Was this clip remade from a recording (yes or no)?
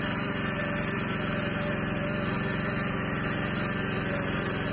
no